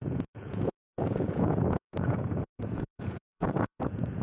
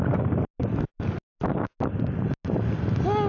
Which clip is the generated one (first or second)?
first